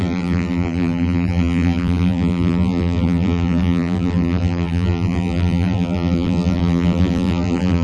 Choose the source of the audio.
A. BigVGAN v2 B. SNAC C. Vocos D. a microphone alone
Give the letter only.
A